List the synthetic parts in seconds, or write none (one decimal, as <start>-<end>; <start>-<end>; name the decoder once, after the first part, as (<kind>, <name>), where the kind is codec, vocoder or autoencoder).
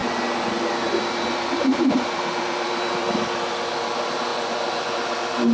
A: 4.3-4.9 (vocoder, Vocos)